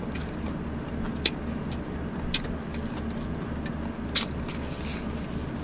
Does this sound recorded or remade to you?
recorded